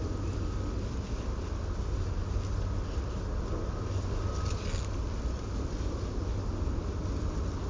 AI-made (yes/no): no